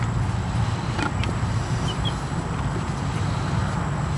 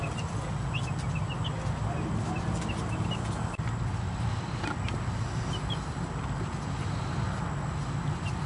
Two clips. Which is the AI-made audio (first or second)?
first